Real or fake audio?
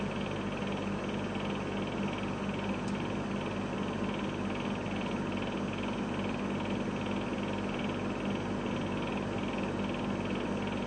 real